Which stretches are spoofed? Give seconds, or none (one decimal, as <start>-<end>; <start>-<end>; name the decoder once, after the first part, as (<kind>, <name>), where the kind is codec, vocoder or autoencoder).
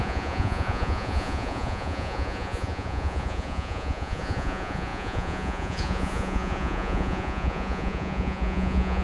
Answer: 0.0-9.0 (vocoder, Vocos)